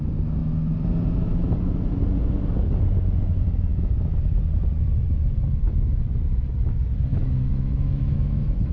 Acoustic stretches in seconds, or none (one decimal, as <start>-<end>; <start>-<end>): 0.0-3.7; 4.2-7.1